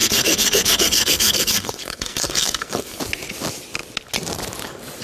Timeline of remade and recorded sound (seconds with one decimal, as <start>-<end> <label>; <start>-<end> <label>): 0.0-3.0 remade; 3.0-5.0 recorded